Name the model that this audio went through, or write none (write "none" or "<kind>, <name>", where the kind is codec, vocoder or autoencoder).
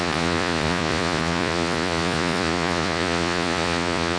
vocoder, Vocos